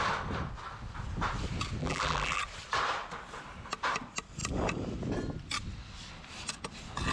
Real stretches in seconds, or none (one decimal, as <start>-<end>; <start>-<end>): 0.0-1.8; 2.4-7.1